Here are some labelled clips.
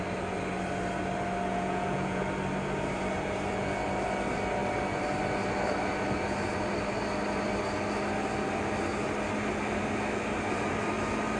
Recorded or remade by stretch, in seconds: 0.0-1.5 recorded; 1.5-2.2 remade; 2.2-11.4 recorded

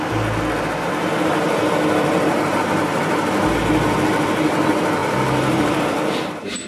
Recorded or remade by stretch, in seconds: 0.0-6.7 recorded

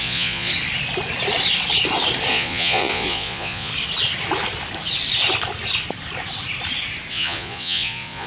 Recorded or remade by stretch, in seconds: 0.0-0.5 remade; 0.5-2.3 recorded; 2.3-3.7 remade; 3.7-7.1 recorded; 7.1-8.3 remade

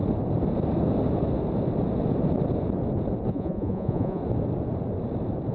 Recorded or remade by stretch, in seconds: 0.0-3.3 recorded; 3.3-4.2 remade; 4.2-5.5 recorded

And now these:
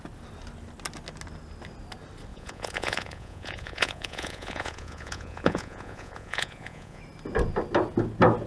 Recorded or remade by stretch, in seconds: 0.0-2.3 recorded; 2.3-7.0 remade; 7.0-8.5 recorded

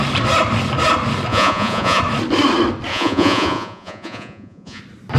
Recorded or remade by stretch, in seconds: 0.0-1.3 recorded; 1.3-2.0 remade; 2.0-2.9 recorded; 2.9-4.8 remade; 4.8-5.2 recorded